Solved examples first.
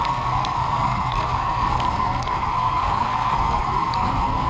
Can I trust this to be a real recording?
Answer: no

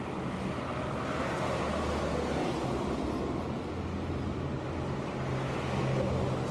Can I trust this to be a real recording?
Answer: yes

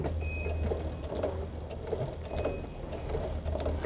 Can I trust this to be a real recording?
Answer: yes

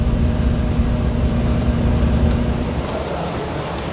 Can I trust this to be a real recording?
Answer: yes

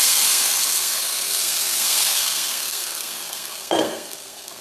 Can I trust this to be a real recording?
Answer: no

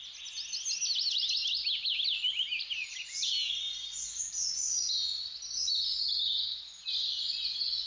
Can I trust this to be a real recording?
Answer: yes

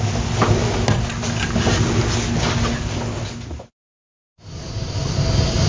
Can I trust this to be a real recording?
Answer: yes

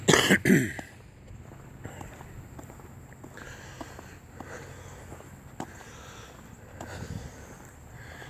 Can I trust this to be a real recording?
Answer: yes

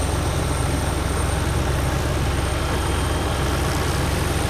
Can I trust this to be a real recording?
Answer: yes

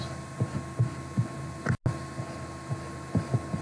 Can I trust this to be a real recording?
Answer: yes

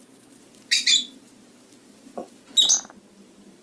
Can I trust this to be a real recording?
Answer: yes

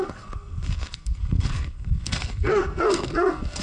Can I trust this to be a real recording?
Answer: no